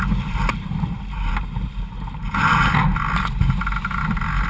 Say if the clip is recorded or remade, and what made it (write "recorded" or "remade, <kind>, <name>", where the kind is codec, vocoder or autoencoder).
recorded